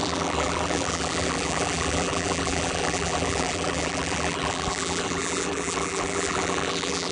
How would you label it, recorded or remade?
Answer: remade